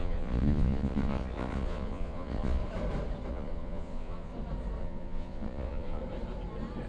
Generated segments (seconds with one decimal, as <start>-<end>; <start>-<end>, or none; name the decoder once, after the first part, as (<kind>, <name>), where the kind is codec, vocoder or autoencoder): 0.0-2.6 (vocoder, Vocos); 3.3-4.3; 4.8-6.0